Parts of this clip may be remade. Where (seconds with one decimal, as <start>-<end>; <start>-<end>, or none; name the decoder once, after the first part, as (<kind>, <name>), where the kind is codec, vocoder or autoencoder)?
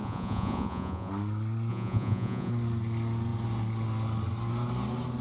0.0-1.1 (vocoder, Vocos); 1.7-2.5